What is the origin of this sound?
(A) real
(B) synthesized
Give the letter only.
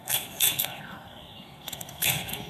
B